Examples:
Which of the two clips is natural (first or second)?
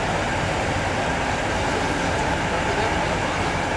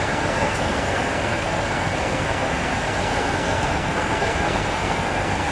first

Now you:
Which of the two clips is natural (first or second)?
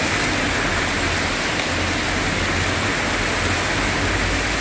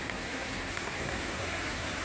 first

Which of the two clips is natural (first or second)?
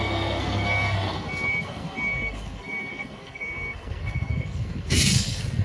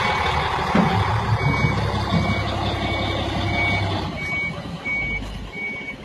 second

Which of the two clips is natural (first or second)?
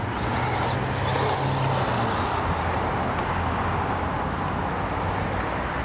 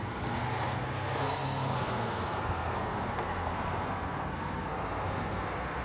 first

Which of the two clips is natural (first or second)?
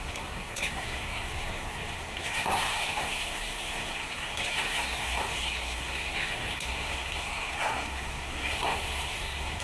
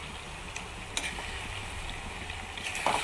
second